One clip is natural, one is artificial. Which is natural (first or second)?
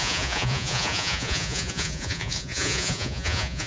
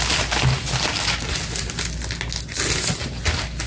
second